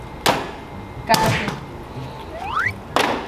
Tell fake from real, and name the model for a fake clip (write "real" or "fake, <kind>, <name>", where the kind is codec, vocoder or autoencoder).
real